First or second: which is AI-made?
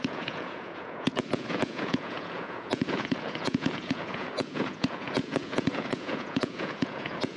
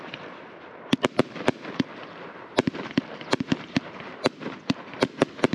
first